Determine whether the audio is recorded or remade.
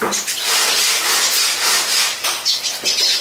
recorded